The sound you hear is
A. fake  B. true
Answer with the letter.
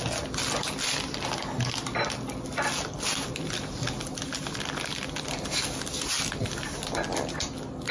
B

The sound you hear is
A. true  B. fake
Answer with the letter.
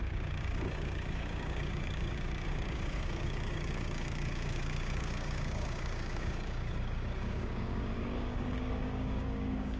B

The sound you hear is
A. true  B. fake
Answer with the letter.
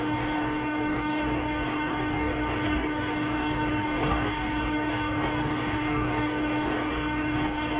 B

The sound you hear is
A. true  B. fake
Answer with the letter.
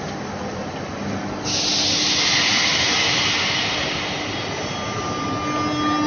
A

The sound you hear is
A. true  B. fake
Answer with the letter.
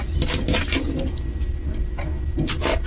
A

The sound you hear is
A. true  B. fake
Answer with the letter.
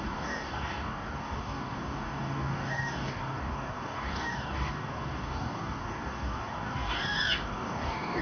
B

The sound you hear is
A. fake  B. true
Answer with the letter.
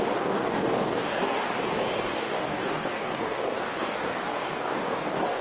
A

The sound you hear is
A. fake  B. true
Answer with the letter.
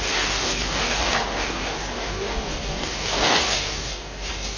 A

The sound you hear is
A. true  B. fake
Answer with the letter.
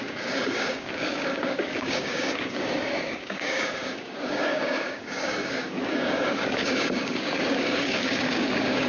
B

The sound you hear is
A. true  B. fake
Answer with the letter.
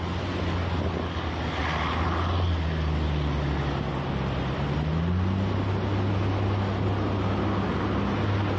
A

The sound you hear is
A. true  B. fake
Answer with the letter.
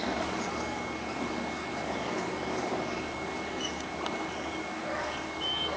B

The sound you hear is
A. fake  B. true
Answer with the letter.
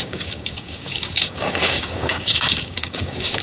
A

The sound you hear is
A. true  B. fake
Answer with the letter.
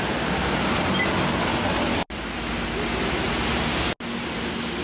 A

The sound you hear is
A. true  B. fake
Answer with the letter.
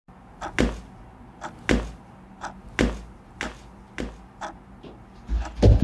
A